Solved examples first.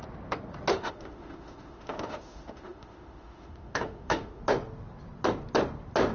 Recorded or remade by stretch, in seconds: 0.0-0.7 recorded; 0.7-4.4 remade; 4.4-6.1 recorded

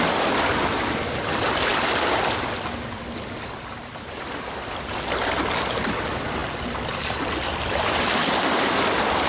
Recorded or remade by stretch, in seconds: 0.0-9.3 recorded

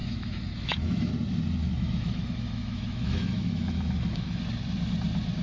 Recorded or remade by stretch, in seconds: 0.0-1.1 remade; 1.1-1.6 recorded; 1.6-4.4 remade; 4.4-5.4 recorded

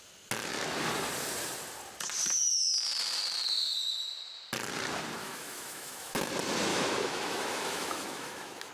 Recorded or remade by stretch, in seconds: 0.0-5.2 recorded; 5.2-6.3 remade; 6.3-6.7 recorded; 6.7-8.7 remade

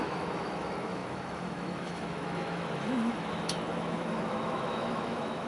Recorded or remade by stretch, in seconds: 0.0-5.5 remade